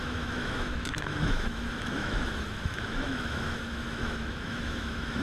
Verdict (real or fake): fake